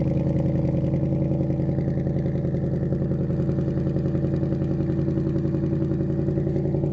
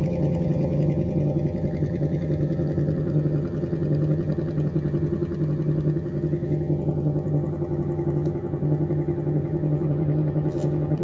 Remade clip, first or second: second